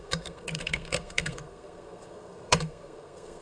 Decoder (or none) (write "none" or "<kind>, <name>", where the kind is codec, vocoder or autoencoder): codec, SNAC